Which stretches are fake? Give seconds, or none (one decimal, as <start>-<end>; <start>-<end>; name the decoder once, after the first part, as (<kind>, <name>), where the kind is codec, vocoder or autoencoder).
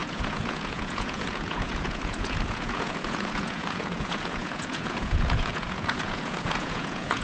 0.0-7.2 (vocoder, Vocos)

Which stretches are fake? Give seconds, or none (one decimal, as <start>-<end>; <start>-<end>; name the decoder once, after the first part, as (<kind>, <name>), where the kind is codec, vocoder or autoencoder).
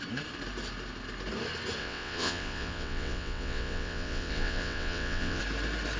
1.8-5.4 (vocoder, WaveNeXt)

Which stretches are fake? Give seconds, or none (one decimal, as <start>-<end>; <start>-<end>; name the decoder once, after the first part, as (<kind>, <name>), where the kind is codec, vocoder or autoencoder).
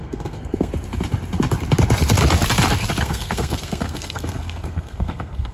0.0-0.7 (codec, SNAC); 3.0-5.5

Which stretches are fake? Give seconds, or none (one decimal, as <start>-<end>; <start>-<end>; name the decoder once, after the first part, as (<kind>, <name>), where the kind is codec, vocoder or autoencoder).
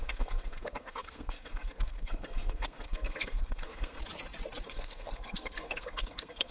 0.0-4.0 (codec, SNAC); 4.7-6.5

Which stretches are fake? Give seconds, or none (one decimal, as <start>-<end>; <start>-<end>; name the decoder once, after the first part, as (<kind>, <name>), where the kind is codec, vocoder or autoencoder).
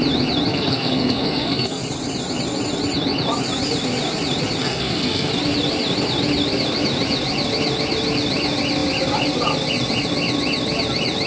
0.5-1.8 (codec, SNAC); 4.6-5.3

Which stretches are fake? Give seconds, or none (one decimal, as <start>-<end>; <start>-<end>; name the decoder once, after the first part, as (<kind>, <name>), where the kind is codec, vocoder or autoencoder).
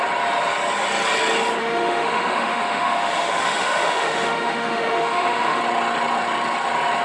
1.6-5.6 (autoencoder, DAC-VAE)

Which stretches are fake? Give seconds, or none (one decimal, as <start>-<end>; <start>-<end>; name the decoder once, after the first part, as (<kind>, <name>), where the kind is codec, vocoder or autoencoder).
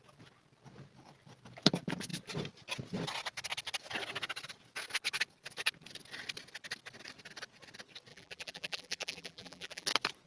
8.1-9.9 (vocoder, BigVGAN v2)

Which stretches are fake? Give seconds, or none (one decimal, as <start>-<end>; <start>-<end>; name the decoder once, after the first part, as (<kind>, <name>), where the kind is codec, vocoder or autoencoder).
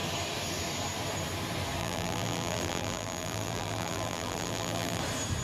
1.8-5.0 (vocoder, BigVGAN v2)